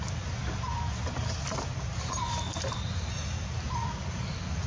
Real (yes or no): yes